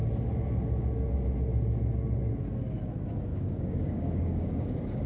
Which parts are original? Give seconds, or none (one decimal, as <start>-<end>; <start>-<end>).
0.0-3.3

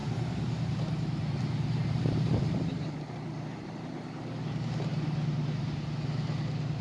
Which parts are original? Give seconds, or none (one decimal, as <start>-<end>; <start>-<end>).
3.4-6.8

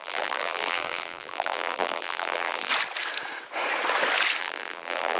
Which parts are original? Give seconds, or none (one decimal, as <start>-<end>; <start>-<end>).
2.7-4.4